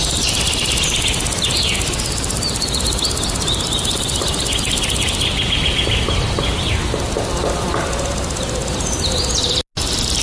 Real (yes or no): yes